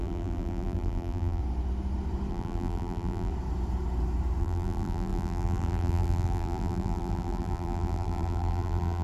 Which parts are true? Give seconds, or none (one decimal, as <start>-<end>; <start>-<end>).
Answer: 1.4-2.3; 3.3-4.4